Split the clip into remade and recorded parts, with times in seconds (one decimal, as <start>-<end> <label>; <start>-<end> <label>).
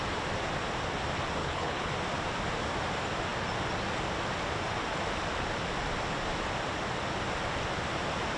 0.0-1.4 recorded; 1.4-1.9 remade; 1.9-8.4 recorded